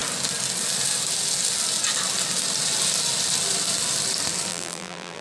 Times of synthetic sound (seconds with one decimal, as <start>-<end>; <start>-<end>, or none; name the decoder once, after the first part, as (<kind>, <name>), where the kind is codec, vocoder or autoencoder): 4.5-5.2 (vocoder, BigVGAN v2)